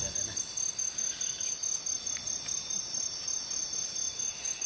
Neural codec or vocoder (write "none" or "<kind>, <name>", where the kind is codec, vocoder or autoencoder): none